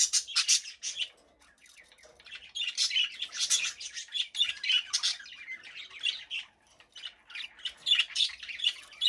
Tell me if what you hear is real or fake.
real